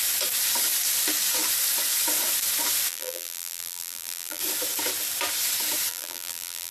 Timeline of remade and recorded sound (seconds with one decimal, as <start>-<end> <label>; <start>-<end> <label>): 0.0-2.9 recorded; 2.9-4.4 remade; 4.4-5.9 recorded; 5.9-6.7 remade